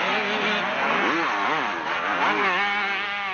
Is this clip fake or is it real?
real